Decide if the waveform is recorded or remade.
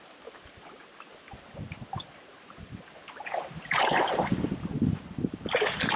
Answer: recorded